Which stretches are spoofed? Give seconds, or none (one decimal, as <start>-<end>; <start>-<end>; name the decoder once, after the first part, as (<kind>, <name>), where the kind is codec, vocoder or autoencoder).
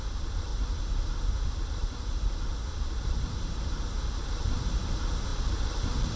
none